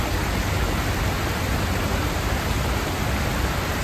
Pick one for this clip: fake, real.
real